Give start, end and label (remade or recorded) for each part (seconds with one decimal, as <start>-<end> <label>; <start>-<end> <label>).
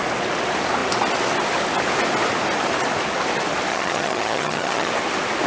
0.0-3.7 recorded; 3.7-4.9 remade; 4.9-5.5 recorded